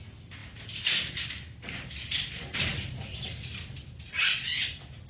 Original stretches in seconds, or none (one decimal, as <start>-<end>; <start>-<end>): 0.0-0.4; 2.3-5.1